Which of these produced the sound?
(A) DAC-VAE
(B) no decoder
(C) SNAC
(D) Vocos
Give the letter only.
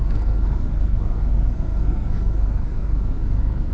C